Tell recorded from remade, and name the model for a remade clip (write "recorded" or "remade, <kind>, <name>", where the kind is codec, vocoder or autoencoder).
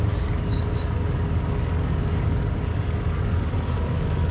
remade, codec, DAC